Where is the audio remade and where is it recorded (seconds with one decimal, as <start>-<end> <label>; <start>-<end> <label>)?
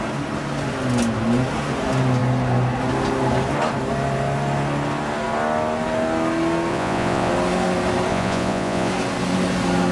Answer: 0.0-6.7 recorded; 6.7-7.3 remade; 7.3-8.1 recorded; 8.1-8.9 remade; 8.9-9.9 recorded